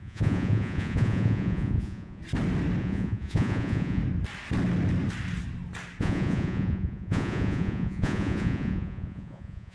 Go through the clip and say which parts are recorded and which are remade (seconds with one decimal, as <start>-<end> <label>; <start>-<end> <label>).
0.0-2.2 remade; 2.2-2.8 recorded; 2.8-4.0 remade; 4.0-6.0 recorded; 6.0-9.7 remade